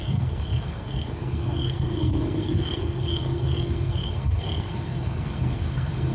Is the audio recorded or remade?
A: remade